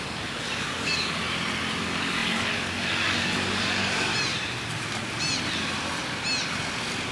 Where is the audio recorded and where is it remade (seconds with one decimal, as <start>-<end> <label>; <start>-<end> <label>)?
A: 0.0-1.2 remade; 1.2-1.8 recorded; 1.8-4.1 remade; 4.1-7.1 recorded